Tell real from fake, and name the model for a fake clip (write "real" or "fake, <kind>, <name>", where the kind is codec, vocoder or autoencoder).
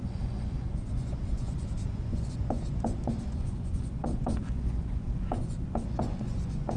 fake, vocoder, Vocos